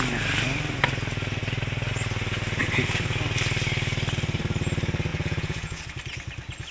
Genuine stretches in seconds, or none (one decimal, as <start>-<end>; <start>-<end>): 0.0-5.1; 5.8-6.7